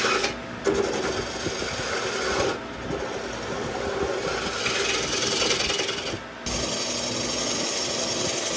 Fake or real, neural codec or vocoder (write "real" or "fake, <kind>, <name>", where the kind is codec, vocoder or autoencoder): real